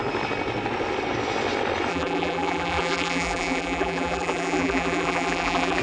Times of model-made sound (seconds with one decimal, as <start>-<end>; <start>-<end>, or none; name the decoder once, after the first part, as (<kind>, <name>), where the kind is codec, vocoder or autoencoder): 1.9-5.8 (vocoder, BigVGAN v2)